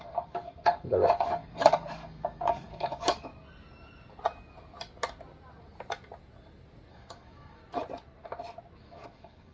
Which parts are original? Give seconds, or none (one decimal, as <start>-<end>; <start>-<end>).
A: 3.3-6.9; 7.6-8.8